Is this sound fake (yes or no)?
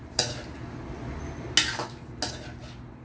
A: no